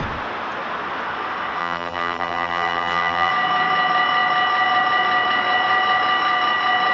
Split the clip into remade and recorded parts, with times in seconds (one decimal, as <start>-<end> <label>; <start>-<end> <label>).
0.0-1.6 recorded; 1.6-3.3 remade; 3.3-6.9 recorded